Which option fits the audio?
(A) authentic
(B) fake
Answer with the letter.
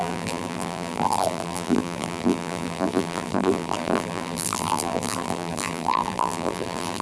B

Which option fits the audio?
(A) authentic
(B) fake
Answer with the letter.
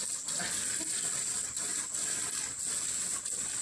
A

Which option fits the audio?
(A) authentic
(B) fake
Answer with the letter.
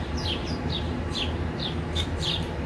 B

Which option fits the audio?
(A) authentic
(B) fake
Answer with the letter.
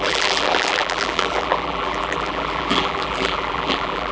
B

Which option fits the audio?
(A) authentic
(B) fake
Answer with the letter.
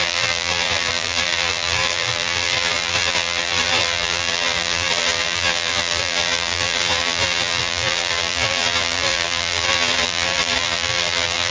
B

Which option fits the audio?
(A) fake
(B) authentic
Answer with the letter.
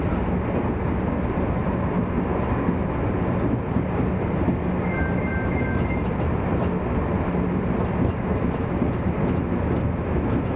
B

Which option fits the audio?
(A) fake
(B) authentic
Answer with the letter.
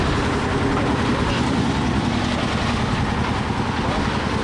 B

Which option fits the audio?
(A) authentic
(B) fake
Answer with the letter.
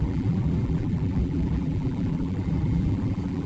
B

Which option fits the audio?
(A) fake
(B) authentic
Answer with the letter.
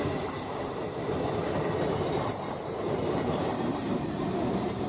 A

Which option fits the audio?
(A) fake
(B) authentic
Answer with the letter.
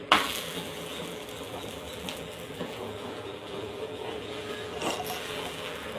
A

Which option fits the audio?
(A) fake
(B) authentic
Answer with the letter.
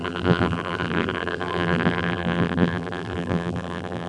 A